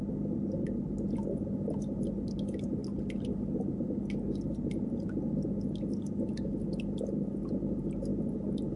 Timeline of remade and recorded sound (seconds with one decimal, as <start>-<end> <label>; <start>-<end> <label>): 0.0-8.8 recorded